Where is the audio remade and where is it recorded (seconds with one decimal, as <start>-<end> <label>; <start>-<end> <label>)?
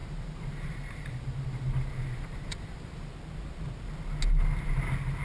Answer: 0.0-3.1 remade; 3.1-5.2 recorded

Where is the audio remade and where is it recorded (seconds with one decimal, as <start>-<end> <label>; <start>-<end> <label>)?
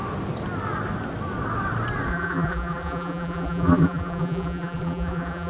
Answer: 0.0-2.1 recorded; 2.1-5.5 remade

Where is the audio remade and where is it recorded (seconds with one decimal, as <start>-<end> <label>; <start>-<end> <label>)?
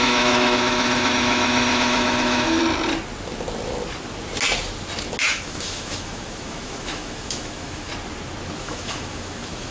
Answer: 0.0-2.6 remade; 2.6-5.3 recorded; 5.3-7.9 remade; 7.9-8.6 recorded; 8.6-9.7 remade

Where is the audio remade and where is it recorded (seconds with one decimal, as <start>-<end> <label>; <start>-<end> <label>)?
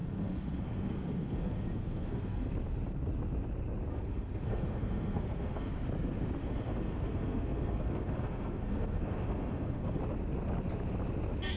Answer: 0.0-2.5 remade; 2.5-3.9 recorded; 3.9-5.7 remade; 5.7-6.4 recorded; 6.4-10.0 remade; 10.0-11.6 recorded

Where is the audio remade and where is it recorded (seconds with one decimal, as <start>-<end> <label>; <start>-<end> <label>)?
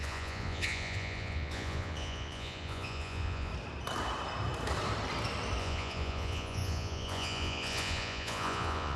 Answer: 0.0-3.5 remade; 3.5-5.6 recorded; 5.6-9.0 remade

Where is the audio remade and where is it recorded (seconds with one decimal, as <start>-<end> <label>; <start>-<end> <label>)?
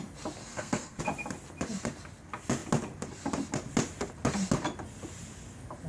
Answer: 0.0-0.4 recorded; 0.4-1.0 remade; 1.0-5.9 recorded